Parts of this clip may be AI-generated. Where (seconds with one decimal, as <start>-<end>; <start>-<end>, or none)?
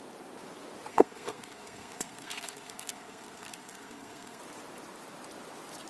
0.9-4.4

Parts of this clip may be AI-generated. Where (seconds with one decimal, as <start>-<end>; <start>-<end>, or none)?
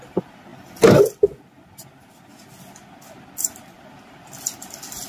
none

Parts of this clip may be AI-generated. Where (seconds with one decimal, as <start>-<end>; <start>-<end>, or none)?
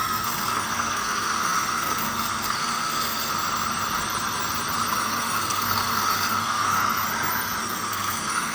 0.0-3.3; 4.9-6.8; 7.6-8.5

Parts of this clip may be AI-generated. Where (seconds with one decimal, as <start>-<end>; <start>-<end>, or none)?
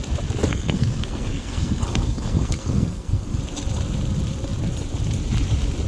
0.4-3.4